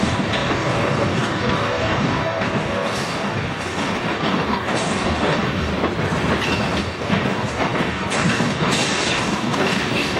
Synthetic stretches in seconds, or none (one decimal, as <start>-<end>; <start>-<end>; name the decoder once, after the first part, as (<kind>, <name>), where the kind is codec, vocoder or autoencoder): 0.0-5.7 (codec, DAC); 6.8-10.2